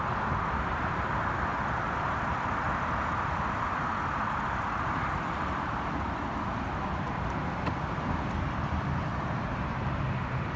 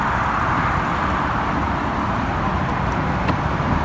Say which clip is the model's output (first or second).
first